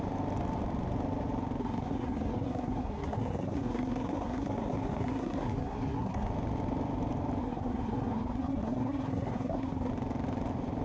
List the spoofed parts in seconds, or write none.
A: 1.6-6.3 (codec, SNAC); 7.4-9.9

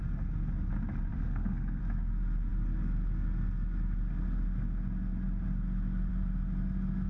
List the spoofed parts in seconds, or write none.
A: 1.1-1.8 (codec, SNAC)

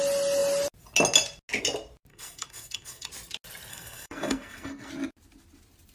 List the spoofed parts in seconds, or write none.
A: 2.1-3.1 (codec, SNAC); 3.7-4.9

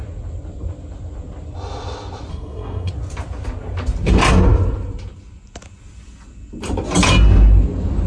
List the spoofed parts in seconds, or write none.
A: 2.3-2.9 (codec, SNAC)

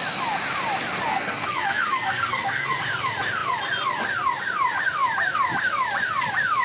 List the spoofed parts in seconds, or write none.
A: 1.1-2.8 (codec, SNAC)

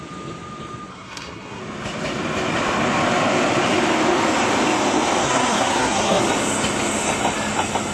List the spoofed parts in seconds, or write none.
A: 0.9-1.6 (codec, SNAC); 5.2-6.2